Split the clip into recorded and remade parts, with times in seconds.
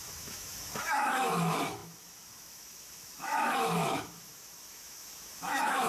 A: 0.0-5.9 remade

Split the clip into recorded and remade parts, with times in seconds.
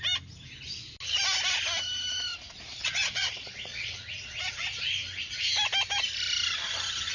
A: 0.0-2.7 recorded; 2.7-4.4 remade; 4.4-7.1 recorded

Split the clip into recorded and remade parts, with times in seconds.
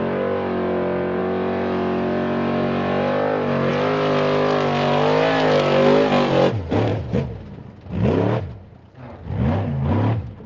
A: 0.0-10.5 recorded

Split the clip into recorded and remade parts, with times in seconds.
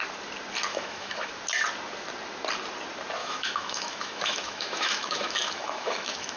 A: 0.0-0.7 recorded; 0.7-1.3 remade; 1.3-3.2 recorded; 3.2-6.4 remade